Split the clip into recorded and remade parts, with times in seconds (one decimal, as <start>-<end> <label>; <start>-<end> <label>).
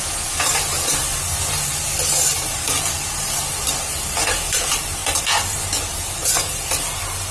0.0-7.3 recorded